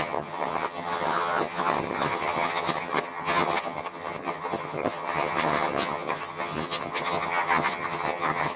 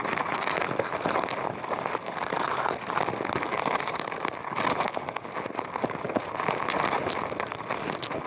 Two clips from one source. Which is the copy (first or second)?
first